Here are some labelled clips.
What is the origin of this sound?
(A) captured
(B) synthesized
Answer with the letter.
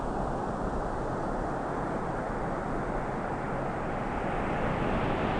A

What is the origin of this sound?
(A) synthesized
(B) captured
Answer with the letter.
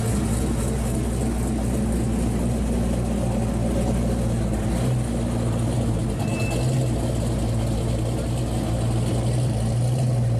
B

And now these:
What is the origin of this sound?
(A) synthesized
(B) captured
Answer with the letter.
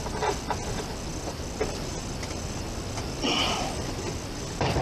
B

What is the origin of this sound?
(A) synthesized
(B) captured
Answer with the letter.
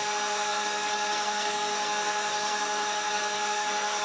A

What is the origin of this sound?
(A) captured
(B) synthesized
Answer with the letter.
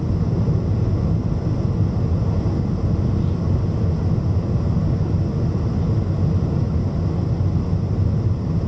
A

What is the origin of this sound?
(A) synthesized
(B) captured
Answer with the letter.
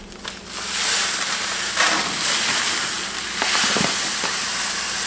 B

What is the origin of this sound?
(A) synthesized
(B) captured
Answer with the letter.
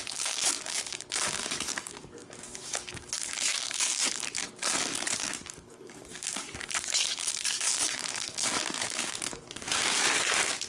A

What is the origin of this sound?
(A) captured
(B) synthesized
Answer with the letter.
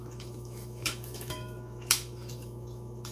B